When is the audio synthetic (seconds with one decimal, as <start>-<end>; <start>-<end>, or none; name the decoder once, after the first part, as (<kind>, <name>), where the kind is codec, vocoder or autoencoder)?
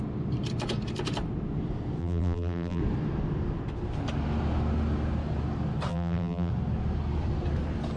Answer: 2.0-2.8 (vocoder, BigVGAN v2); 5.9-6.5